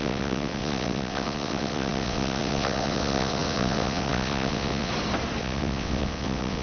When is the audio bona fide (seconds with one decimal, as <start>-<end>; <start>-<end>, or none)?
4.9-5.4